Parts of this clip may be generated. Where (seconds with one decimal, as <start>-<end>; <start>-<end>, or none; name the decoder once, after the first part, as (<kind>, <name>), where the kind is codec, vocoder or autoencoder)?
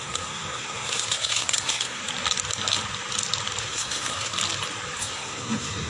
0.0-2.0 (codec, SNAC); 3.6-4.3; 5.0-5.9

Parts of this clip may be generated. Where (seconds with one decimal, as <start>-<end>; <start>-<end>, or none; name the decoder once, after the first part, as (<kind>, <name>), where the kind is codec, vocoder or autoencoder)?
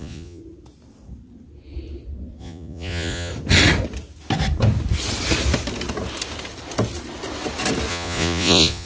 0.0-0.4 (vocoder, Vocos); 2.4-3.3; 7.9-8.8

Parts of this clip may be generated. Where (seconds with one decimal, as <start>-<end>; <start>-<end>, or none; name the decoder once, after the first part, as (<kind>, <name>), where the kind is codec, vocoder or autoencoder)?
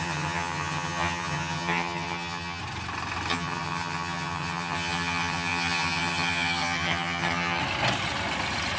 0.0-2.6 (vocoder, HiFi-GAN); 3.3-7.6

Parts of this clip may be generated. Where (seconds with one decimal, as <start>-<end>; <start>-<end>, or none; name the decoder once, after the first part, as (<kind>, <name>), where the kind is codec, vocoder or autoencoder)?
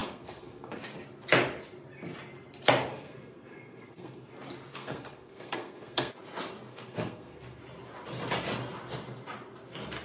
0.0-0.8 (codec, SNAC); 2.9-4.3; 4.7-6.1; 6.7-7.6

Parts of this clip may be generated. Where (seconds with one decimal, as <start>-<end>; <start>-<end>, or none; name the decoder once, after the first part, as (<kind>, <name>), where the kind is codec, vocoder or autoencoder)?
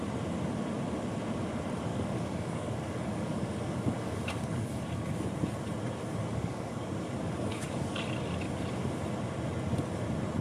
1.9-4.8 (codec, DAC); 6.3-8.0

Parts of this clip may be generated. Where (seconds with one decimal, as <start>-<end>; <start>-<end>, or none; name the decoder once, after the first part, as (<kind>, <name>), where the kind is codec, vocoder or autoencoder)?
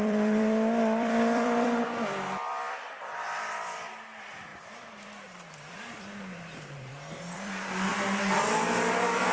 0.0-7.9 (vocoder, BigVGAN v2); 8.6-9.3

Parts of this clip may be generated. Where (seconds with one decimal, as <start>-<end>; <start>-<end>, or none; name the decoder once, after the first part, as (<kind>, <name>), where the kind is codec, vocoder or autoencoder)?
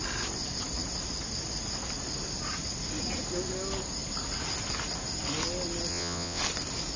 5.9-6.4 (vocoder, WaveNeXt)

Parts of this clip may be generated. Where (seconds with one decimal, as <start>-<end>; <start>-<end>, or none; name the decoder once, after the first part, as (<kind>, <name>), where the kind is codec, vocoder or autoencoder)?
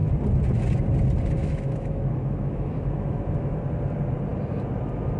1.4-3.6 (autoencoder, DAC-VAE)